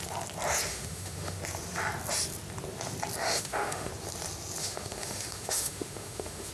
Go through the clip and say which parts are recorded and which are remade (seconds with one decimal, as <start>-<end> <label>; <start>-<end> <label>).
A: 0.0-0.7 recorded; 0.7-1.4 remade; 1.4-3.2 recorded; 3.2-3.9 remade; 3.9-4.6 recorded; 4.6-6.5 remade